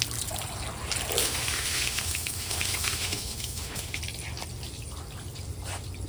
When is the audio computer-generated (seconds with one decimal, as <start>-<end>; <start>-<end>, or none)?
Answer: 1.2-4.0